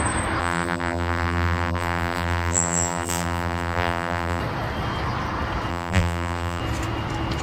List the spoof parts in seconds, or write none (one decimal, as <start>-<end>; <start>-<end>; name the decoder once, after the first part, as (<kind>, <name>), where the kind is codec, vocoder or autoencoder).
0.4-4.4 (vocoder, BigVGAN v2); 5.7-6.6